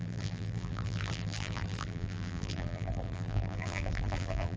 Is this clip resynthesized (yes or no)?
yes